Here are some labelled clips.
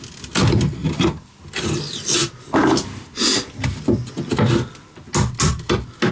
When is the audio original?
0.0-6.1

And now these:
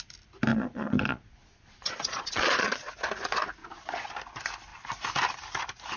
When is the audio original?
0.0-0.5; 2.9-3.6; 4.1-6.0

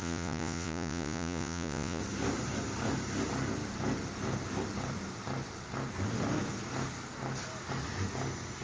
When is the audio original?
2.0-8.6